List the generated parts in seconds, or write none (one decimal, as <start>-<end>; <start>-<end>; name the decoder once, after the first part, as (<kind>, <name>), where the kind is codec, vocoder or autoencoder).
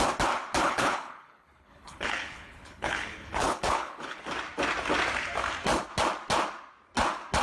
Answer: 0.6-4.2 (codec, HILCodec)